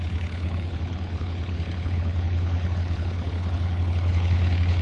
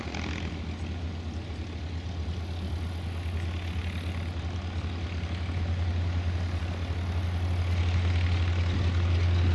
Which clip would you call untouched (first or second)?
second